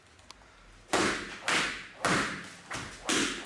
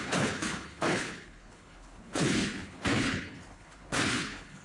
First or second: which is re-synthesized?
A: second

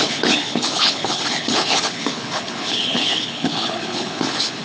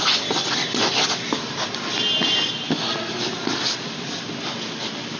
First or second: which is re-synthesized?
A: first